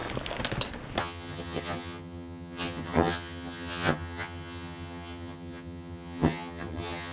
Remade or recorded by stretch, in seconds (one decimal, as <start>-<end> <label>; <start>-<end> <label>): 0.0-1.0 recorded; 1.0-7.1 remade